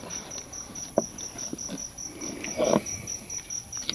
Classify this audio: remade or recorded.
recorded